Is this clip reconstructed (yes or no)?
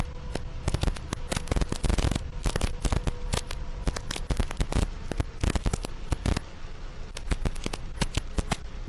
no